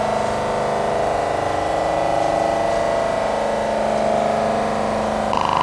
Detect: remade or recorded recorded